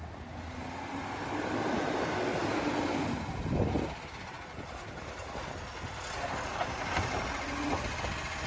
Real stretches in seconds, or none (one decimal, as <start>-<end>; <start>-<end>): 0.0-8.5